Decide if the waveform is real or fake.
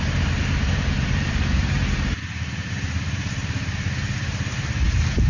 fake